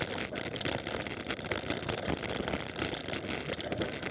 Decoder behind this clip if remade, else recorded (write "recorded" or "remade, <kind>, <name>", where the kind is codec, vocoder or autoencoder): recorded